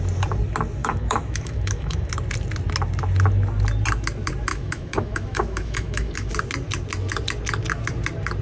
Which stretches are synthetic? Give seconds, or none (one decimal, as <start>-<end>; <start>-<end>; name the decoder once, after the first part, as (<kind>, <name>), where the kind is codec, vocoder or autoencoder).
0.8-2.1 (autoencoder, DAC-VAE); 4.5-6.3